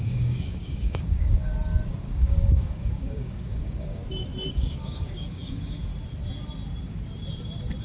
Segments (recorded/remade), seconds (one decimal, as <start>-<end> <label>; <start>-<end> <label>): 0.0-1.5 remade; 1.5-2.0 recorded; 2.0-4.0 remade; 4.0-4.5 recorded; 4.5-5.9 remade; 5.9-7.8 recorded